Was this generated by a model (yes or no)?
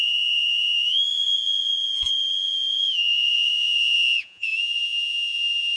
yes